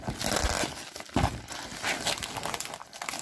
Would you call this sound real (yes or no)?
yes